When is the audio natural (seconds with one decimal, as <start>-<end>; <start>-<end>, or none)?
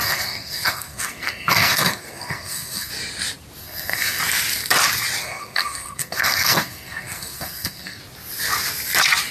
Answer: 2.9-3.6; 4.2-5.2; 8.0-9.3